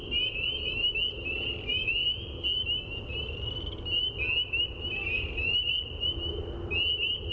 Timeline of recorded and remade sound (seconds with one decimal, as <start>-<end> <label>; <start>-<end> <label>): 0.0-7.3 recorded